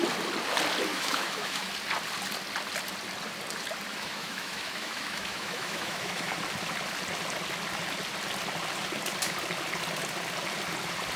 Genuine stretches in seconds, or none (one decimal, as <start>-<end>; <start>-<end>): 0.0-0.9; 1.7-3.9; 6.3-11.2